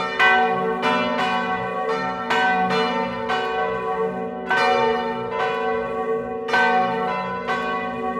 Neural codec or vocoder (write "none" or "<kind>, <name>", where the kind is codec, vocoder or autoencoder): none